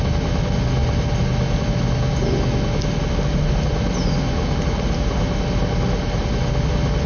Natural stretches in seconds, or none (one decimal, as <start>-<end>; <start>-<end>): 0.0-7.1